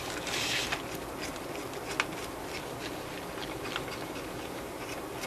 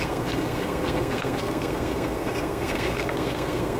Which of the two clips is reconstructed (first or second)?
second